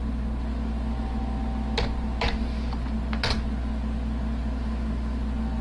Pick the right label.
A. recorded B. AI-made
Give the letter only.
A